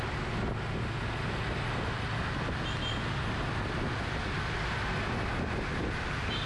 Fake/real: real